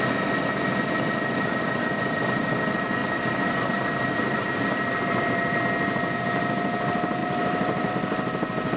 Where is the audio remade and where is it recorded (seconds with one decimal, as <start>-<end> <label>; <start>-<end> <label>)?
0.0-3.0 recorded; 3.0-5.6 remade; 5.6-7.2 recorded; 7.2-7.9 remade; 7.9-8.8 recorded